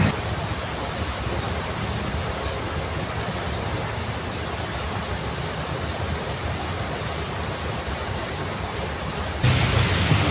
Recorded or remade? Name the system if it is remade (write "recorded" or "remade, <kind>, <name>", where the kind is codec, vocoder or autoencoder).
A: recorded